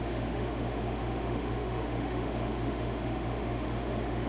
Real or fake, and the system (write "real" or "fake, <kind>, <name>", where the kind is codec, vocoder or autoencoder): fake, autoencoder, DAC-VAE